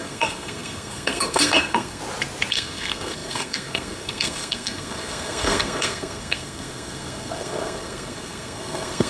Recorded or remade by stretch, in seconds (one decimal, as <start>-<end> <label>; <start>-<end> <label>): 0.0-2.0 remade; 2.0-2.5 recorded; 2.5-9.1 remade